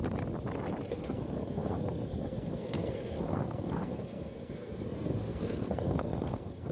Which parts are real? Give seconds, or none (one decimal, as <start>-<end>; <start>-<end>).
0.0-0.9